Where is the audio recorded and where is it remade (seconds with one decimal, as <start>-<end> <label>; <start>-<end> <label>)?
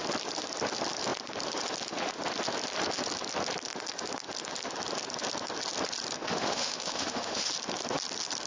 0.0-6.3 recorded; 6.3-7.5 remade; 7.5-8.5 recorded